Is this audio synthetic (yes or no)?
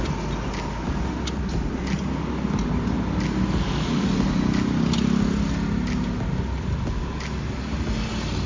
no